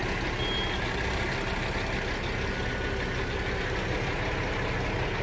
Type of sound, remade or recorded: recorded